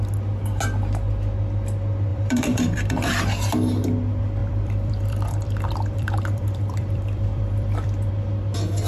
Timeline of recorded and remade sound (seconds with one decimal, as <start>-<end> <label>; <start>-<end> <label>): 0.0-2.1 recorded; 2.1-3.2 remade; 3.2-4.4 recorded; 4.4-8.1 remade; 8.1-8.9 recorded